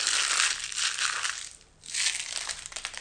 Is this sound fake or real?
real